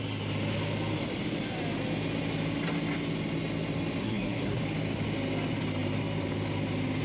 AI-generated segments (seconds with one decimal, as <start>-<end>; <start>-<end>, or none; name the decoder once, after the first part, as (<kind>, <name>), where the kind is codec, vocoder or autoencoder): 4.0-4.6 (codec, SNAC)